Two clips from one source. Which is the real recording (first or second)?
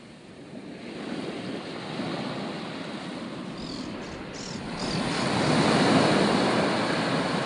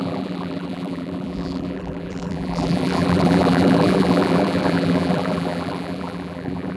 first